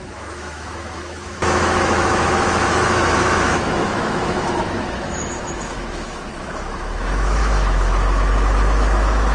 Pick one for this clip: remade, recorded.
remade